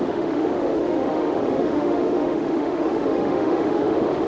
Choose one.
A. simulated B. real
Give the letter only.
A